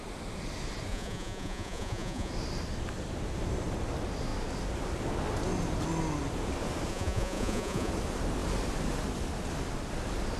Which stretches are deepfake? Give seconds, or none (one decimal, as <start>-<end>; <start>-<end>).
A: 0.9-2.3; 6.9-7.9